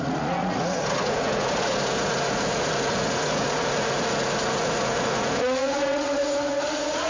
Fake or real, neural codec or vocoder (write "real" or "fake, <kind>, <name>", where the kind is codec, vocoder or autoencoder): fake, vocoder, Vocos